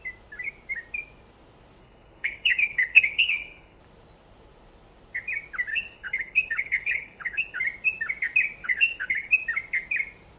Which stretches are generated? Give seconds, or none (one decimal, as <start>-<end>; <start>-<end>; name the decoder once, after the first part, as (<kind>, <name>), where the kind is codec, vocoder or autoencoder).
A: 1.8-3.8 (codec, HILCodec); 5.7-7.6; 8.6-9.3